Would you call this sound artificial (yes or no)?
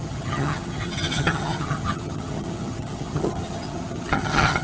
yes